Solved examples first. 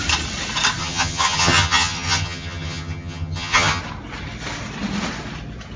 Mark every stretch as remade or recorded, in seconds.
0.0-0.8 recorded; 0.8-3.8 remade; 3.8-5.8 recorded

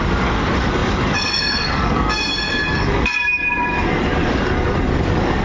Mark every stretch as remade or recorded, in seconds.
0.0-5.4 remade

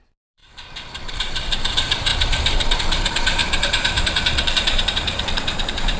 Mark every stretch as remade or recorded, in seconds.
0.0-6.0 remade

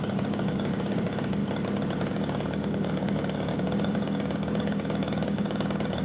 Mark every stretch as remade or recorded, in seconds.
0.0-1.4 remade; 1.4-2.1 recorded; 2.1-6.0 remade

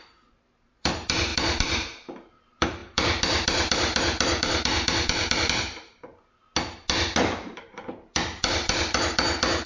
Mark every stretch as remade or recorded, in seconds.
0.0-6.4 remade; 6.4-7.2 recorded; 7.2-9.7 remade

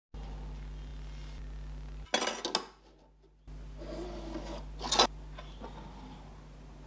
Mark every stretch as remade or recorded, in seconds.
0.0-6.9 recorded

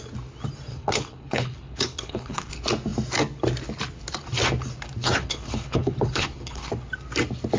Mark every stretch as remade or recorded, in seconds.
0.0-0.7 recorded; 0.7-2.5 remade; 2.5-5.0 recorded; 5.0-6.7 remade; 6.7-7.6 recorded